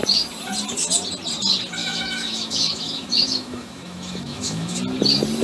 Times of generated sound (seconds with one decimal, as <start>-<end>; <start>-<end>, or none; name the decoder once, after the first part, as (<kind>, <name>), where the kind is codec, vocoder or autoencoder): 1.8-4.8 (autoencoder, DAC-VAE)